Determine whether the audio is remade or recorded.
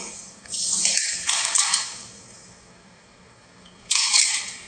remade